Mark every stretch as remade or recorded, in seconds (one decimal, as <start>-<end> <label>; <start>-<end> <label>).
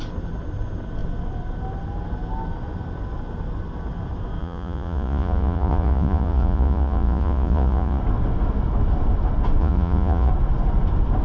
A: 0.0-4.4 recorded; 4.4-8.0 remade; 8.0-9.6 recorded; 9.6-10.3 remade; 10.3-11.2 recorded